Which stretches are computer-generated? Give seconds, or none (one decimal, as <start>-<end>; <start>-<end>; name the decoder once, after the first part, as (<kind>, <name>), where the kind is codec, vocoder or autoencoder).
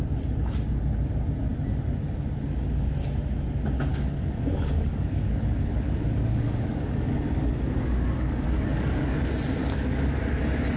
3.9-9.2 (codec, DAC); 9.6-10.2